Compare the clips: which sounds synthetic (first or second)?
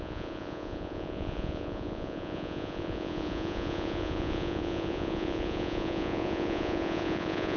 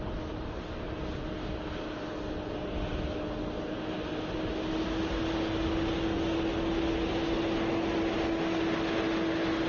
first